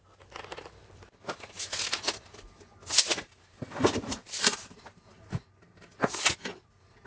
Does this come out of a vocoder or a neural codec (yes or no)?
no